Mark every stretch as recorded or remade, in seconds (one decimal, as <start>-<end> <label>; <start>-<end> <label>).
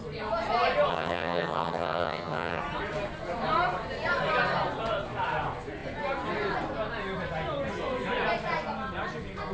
0.0-0.9 recorded; 0.9-2.6 remade; 2.6-9.5 recorded